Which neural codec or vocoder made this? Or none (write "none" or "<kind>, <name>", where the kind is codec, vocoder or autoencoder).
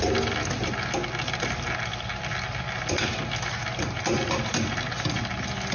none